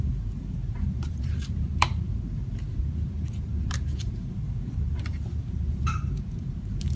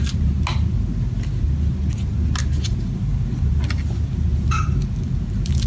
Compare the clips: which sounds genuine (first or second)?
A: second